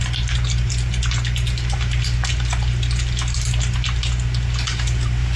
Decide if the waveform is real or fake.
real